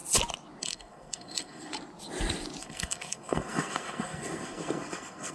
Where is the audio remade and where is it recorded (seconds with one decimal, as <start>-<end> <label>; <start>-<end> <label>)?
0.0-0.6 recorded; 0.6-1.7 remade; 1.7-2.6 recorded; 2.6-5.3 remade